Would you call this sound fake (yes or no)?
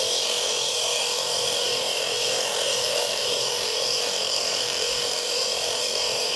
yes